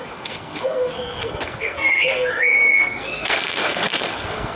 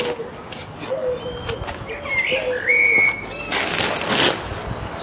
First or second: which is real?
second